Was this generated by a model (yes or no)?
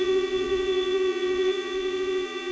yes